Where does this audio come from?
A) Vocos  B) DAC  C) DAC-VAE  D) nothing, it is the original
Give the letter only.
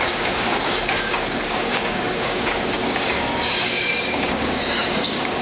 B